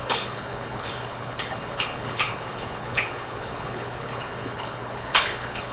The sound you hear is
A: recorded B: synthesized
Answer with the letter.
B